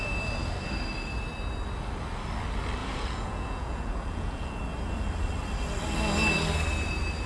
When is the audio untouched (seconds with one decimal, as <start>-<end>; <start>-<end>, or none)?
0.0-2.8; 4.6-7.3